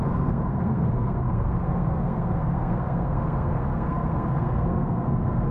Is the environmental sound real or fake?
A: fake